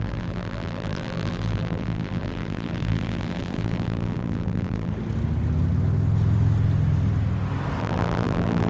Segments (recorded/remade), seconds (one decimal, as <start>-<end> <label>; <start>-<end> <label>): 0.0-4.9 remade; 4.9-7.8 recorded; 7.8-8.7 remade